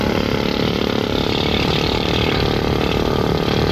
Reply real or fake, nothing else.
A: fake